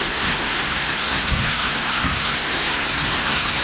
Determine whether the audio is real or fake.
fake